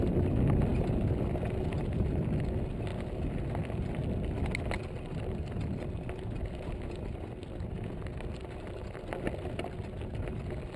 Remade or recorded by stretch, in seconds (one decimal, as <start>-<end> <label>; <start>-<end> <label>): 0.0-2.9 recorded; 2.9-3.4 remade; 3.4-10.8 recorded